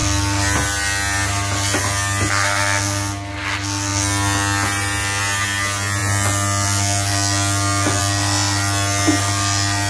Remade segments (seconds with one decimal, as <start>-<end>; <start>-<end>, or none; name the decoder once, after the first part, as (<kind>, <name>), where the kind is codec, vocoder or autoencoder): none